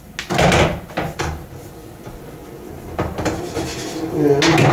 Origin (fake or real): real